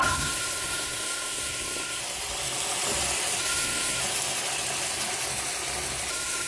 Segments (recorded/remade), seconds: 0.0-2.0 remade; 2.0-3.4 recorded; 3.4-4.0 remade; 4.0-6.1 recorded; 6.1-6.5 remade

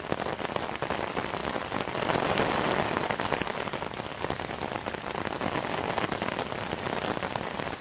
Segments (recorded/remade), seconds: 0.0-7.8 recorded

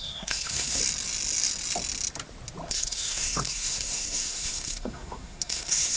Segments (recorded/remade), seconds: 0.0-0.8 remade; 0.8-2.7 recorded; 2.7-6.0 remade

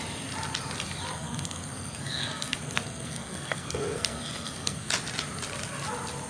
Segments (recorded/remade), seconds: 0.0-1.1 recorded; 1.1-4.9 remade; 4.9-6.3 recorded

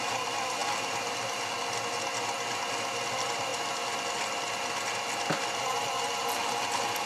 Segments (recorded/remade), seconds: 0.0-7.1 recorded

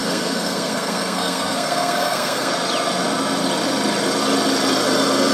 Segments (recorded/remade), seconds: 0.0-2.5 remade; 2.5-5.3 recorded

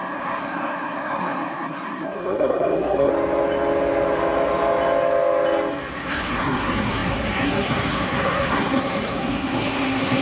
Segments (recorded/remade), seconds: 0.0-3.1 remade; 3.1-6.0 recorded; 6.0-10.2 remade